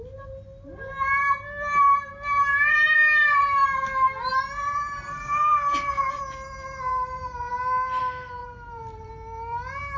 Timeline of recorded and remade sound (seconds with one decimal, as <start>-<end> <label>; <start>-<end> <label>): 0.0-3.6 recorded; 3.6-6.2 remade; 6.2-6.9 recorded; 6.9-8.0 remade; 8.0-8.4 recorded; 8.4-9.1 remade; 9.1-10.0 recorded